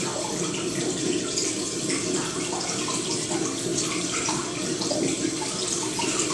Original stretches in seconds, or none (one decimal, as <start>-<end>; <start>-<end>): 0.0-6.3